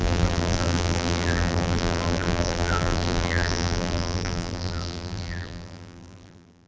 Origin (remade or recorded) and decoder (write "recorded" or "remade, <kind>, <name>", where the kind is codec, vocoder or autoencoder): remade, vocoder, BigVGAN v2